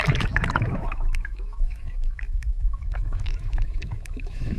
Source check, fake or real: fake